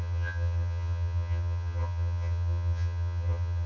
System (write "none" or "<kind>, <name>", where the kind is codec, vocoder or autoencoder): vocoder, HiFi-GAN